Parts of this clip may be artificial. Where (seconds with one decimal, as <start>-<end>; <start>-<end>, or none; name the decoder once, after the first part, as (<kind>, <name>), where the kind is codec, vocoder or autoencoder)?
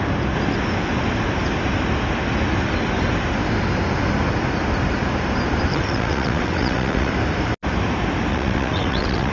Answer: 5.7-7.1 (vocoder, WaveNeXt); 8.3-9.3